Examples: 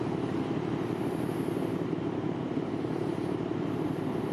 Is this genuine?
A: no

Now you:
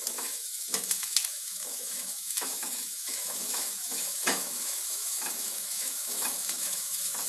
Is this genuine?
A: no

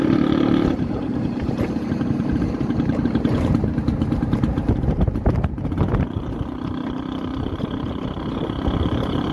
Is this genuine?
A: no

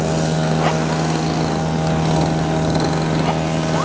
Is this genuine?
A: yes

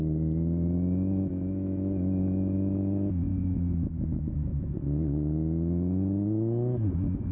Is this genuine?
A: no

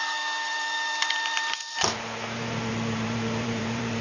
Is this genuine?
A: no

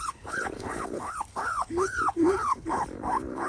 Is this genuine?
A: no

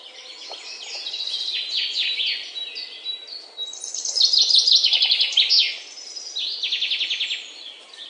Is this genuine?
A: yes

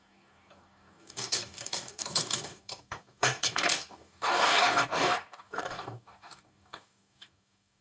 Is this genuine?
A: no